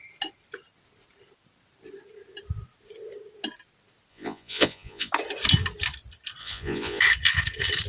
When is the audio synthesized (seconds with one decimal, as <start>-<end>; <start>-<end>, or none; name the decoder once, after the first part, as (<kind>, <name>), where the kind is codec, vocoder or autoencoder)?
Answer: 4.1-5.1 (vocoder, Vocos); 6.4-7.0